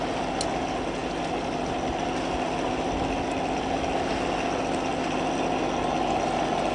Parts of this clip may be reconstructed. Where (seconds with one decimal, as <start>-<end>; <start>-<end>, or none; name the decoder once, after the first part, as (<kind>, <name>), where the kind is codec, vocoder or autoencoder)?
none